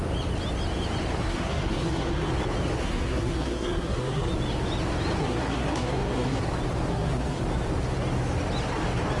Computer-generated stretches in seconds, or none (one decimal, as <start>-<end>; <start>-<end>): 1.2-2.3; 2.8-4.3; 5.2-6.4; 6.9-7.4